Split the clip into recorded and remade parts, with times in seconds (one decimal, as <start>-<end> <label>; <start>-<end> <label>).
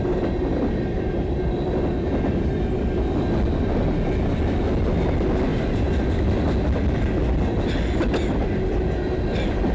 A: 0.0-9.7 recorded